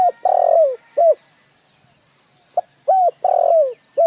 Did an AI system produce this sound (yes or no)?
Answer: no